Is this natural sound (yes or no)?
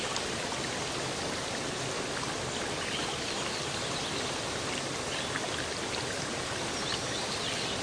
yes